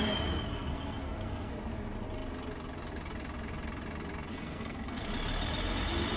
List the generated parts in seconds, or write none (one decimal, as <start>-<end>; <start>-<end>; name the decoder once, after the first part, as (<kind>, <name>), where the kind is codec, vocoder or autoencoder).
0.5-1.5 (codec, SNAC); 4.3-5.1